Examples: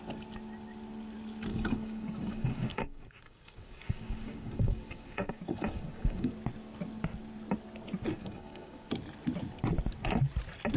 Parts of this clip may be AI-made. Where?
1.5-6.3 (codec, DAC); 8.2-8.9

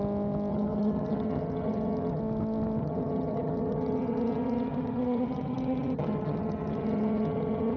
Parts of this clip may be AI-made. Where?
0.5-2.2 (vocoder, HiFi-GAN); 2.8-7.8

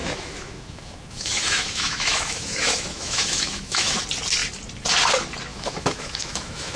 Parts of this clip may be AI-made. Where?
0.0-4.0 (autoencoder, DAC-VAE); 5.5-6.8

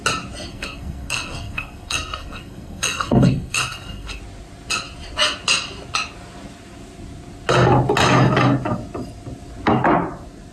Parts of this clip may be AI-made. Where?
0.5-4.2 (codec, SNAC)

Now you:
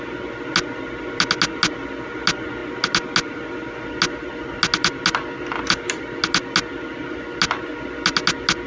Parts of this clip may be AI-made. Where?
none

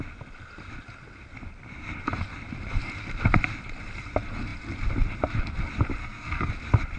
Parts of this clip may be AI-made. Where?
6.0-6.5 (codec, SNAC)

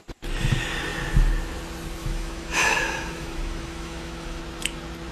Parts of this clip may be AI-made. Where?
2.0-4.4 (autoencoder, DAC-VAE)